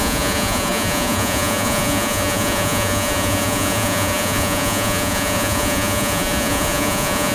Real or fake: fake